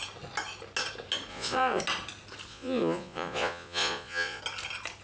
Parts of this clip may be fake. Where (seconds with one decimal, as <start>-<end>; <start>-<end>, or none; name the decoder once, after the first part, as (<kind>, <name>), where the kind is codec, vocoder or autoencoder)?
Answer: 1.3-1.8 (vocoder, Vocos); 2.5-4.4